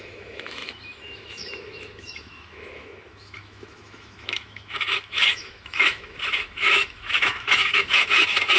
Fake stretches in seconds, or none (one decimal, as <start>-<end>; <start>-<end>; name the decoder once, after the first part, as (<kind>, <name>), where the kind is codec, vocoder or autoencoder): 0.0-8.6 (autoencoder, DAC-VAE)